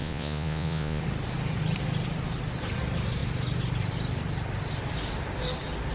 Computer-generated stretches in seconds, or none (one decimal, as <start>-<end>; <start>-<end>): 0.0-1.0